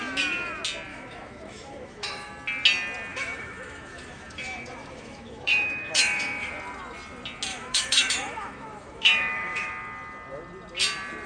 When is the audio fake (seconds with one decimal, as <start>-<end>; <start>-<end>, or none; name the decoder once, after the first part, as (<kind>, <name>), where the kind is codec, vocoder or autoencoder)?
0.9-2.3 (autoencoder, DAC-VAE); 3.1-6.5; 7.5-9.7